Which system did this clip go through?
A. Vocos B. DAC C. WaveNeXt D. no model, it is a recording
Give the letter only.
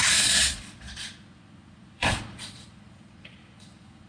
A